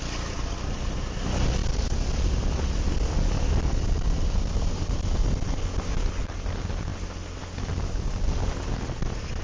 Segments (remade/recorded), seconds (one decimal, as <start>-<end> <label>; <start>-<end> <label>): 0.0-9.4 recorded